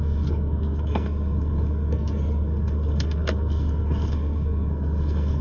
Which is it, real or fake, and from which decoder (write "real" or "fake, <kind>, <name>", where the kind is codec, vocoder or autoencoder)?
fake, codec, SNAC